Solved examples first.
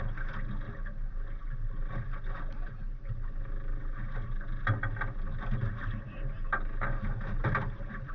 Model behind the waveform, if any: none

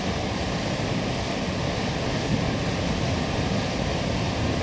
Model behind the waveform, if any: none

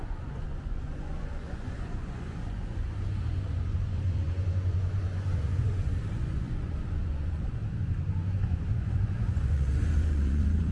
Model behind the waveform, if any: vocoder, Vocos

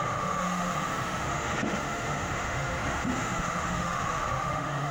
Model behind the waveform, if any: autoencoder, DAC-VAE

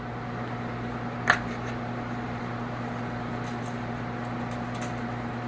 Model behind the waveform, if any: none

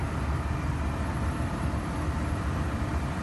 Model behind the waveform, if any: vocoder, BigVGAN v2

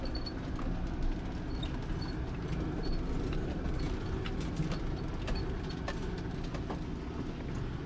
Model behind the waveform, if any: none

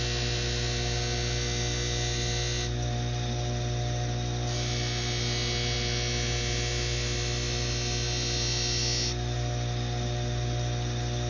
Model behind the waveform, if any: none